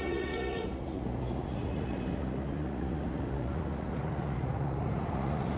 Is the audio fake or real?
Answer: fake